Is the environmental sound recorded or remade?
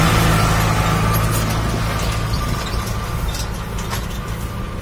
recorded